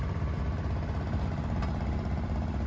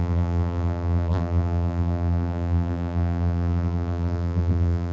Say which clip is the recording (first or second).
first